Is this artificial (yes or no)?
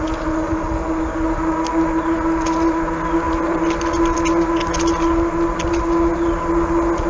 no